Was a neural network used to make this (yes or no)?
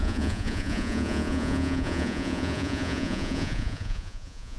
yes